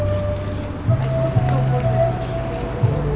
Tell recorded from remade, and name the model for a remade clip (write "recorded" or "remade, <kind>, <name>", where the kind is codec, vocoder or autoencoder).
recorded